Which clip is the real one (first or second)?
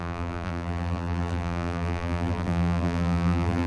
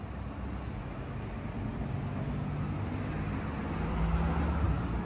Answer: second